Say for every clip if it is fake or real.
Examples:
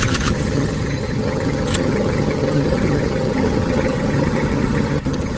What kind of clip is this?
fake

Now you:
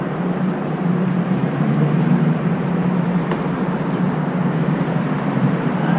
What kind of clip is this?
fake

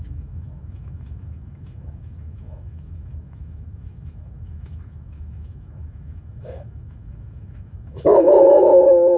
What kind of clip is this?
fake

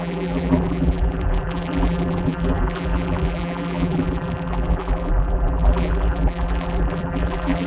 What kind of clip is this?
fake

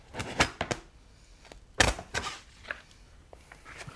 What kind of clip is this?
real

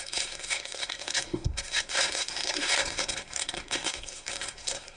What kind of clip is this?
fake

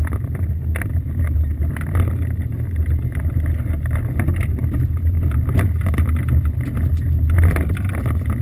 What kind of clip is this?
real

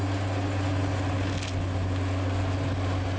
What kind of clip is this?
real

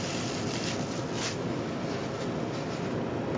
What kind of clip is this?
real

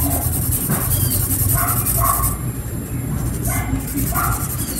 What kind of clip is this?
real